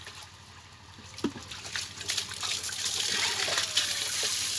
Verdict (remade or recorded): recorded